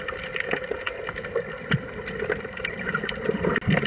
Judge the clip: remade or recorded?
recorded